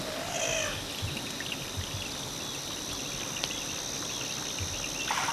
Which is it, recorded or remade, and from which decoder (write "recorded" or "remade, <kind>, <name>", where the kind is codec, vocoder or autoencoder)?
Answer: recorded